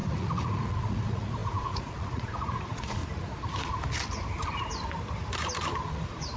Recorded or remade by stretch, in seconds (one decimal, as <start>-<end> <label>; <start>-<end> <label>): 0.0-3.0 remade; 3.0-5.9 recorded; 5.9-6.4 remade